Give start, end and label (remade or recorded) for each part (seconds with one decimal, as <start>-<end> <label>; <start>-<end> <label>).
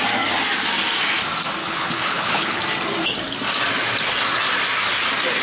0.0-1.6 recorded; 1.6-2.6 remade; 2.6-5.4 recorded